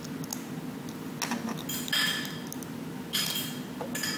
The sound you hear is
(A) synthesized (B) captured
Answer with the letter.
B